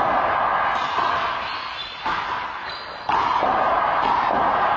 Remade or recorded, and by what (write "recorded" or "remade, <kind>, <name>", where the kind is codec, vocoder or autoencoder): recorded